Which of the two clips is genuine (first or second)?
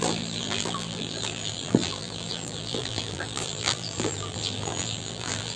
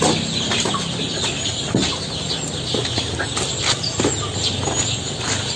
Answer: second